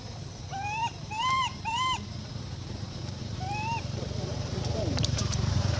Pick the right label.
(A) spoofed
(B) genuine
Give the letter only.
A